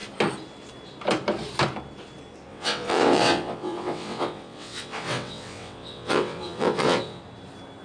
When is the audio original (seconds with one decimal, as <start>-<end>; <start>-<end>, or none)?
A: 0.0-2.5; 7.2-7.8